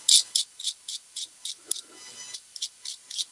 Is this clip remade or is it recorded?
recorded